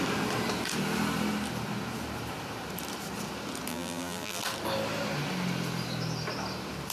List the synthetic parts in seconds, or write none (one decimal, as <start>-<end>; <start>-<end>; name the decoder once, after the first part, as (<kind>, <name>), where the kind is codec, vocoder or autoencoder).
3.7-4.4 (vocoder, BigVGAN v2)